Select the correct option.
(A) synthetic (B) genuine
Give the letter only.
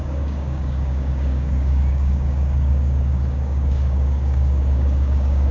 A